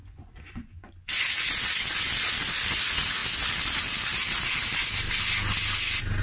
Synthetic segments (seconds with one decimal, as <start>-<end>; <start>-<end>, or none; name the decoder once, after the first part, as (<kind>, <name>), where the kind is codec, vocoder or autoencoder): 0.0-1.1 (vocoder, Vocos)